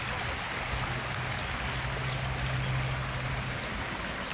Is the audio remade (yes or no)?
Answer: no